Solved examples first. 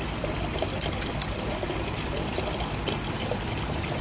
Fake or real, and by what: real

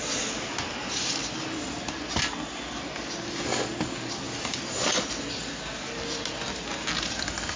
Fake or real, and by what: real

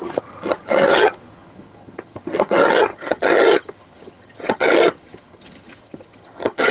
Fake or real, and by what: fake, vocoder, HiFi-GAN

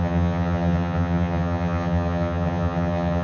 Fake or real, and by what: fake, vocoder, HiFi-GAN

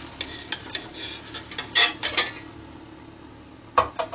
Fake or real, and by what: real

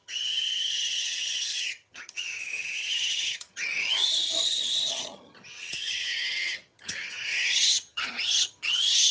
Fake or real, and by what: fake, vocoder, HiFi-GAN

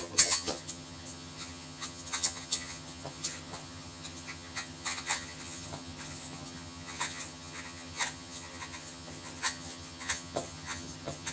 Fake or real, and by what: fake, vocoder, HiFi-GAN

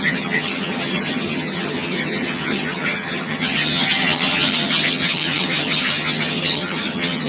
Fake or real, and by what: fake, vocoder, HiFi-GAN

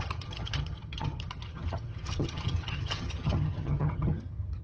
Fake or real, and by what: fake, vocoder, HiFi-GAN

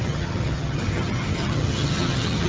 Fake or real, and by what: fake, vocoder, HiFi-GAN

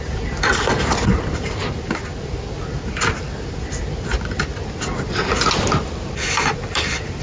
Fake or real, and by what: real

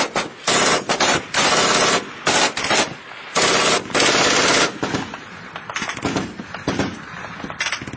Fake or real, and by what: real